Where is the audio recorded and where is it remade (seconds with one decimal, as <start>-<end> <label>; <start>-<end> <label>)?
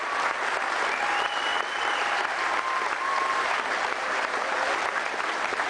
0.0-5.7 recorded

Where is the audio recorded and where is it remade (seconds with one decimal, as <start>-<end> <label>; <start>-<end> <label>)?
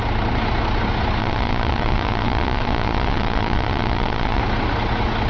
0.0-1.2 recorded; 1.2-4.4 remade; 4.4-5.3 recorded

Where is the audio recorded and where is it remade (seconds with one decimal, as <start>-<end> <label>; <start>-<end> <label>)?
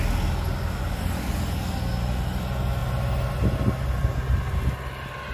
0.0-5.3 recorded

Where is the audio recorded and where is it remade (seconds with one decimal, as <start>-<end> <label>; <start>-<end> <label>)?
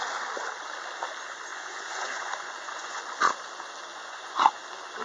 0.0-1.5 recorded; 1.5-3.0 remade; 3.0-3.9 recorded; 3.9-4.6 remade; 4.6-5.0 recorded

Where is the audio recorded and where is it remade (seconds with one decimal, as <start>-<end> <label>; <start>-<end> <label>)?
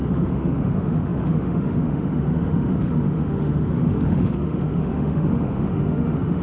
0.0-6.4 remade